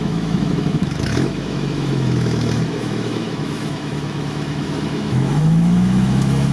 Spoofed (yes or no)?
yes